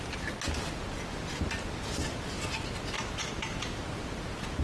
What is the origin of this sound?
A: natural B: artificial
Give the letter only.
A